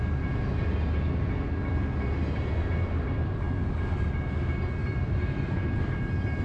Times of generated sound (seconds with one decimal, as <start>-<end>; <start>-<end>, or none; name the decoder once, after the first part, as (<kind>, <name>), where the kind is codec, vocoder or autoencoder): 4.8-6.0 (vocoder, BigVGAN v2)